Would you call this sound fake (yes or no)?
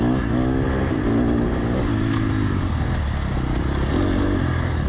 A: no